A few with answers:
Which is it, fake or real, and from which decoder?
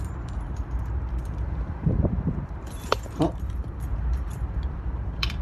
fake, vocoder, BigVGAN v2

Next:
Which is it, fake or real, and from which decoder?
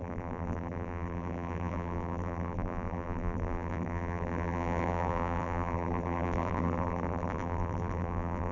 fake, vocoder, BigVGAN v2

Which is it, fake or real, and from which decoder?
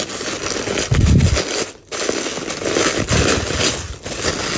real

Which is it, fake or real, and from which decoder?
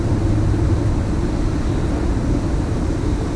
fake, vocoder, BigVGAN v2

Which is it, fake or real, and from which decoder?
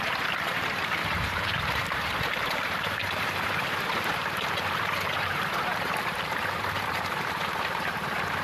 fake, vocoder, BigVGAN v2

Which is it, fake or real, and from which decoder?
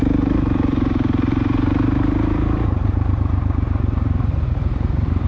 fake, vocoder, BigVGAN v2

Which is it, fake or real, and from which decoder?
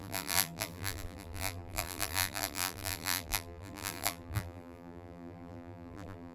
fake, vocoder, BigVGAN v2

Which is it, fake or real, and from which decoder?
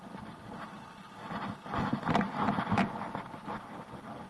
real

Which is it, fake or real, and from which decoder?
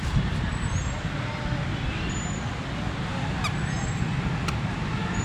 real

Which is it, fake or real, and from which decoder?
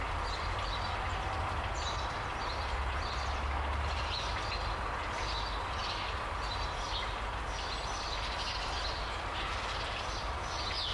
fake, vocoder, BigVGAN v2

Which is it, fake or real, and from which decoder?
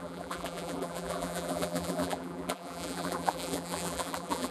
fake, vocoder, BigVGAN v2